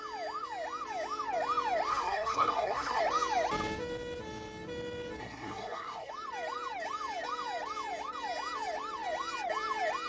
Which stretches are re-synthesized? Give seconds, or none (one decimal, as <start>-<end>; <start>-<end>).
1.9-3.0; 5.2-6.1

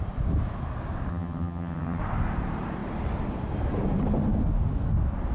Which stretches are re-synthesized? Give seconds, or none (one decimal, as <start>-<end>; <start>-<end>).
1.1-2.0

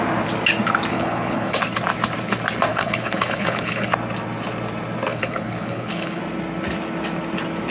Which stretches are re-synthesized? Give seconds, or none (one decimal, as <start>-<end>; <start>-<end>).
0.9-1.6; 2.7-3.9; 5.1-6.2

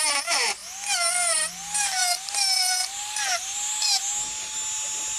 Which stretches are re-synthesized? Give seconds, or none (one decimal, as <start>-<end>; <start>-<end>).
none

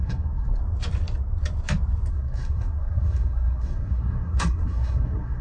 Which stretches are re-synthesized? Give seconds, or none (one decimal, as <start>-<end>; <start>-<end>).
0.0-0.6; 2.1-5.4

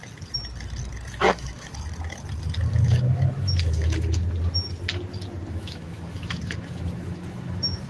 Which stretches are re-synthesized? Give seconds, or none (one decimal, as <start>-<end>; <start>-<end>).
1.1-1.7; 2.7-4.2; 5.5-7.9

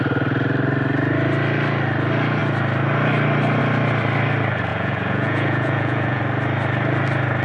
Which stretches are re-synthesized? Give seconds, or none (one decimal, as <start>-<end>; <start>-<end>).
4.7-6.2